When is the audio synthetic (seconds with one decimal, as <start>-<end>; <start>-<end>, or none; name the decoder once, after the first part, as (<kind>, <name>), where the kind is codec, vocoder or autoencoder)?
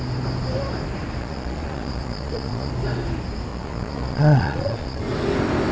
1.2-2.7 (vocoder, Vocos); 3.5-5.0